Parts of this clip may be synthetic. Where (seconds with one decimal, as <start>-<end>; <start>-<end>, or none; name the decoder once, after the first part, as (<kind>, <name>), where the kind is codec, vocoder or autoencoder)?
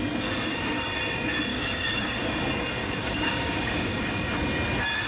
1.5-2.3 (codec, DAC); 2.8-4.3